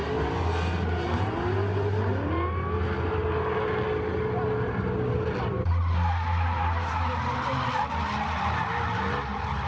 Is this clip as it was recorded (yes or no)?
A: yes